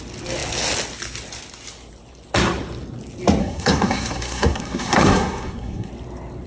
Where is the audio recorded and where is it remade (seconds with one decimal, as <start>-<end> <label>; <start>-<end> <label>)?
0.0-3.4 recorded; 3.4-5.9 remade; 5.9-6.5 recorded